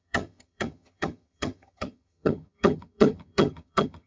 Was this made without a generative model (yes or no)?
no